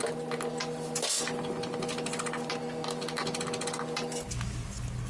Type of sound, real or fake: real